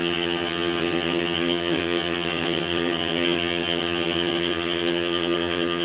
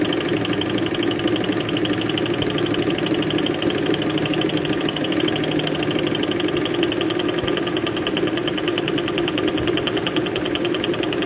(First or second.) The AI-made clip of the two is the first